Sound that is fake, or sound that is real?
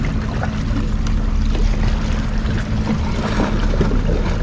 real